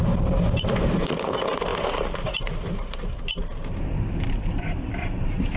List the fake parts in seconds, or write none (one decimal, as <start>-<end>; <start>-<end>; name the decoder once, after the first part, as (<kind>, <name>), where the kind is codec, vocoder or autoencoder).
0.0-3.4 (vocoder, BigVGAN v2); 4.2-5.6